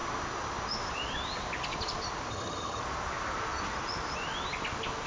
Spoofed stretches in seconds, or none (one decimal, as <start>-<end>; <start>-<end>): 2.3-2.8